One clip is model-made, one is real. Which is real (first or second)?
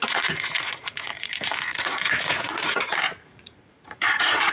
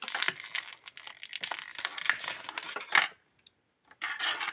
second